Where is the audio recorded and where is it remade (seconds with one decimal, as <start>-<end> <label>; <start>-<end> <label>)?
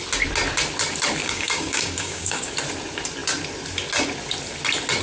0.0-1.2 recorded; 1.2-2.5 remade; 2.5-5.0 recorded